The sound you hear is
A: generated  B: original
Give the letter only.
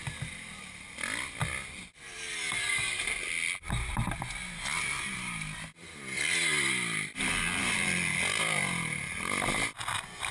B